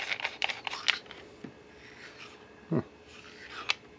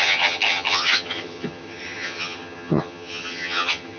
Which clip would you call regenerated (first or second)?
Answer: second